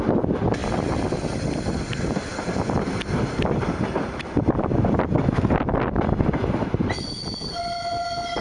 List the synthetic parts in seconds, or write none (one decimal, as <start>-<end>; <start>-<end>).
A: none